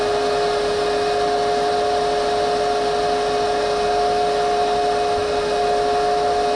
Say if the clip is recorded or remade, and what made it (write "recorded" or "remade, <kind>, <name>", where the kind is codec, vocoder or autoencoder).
recorded